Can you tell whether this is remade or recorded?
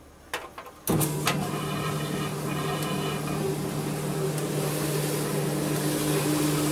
recorded